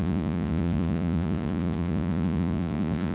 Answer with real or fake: fake